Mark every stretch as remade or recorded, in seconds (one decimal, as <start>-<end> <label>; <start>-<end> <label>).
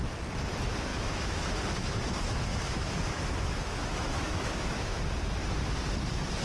0.0-0.9 recorded; 0.9-1.6 remade; 1.6-2.5 recorded; 2.5-5.0 remade; 5.0-6.4 recorded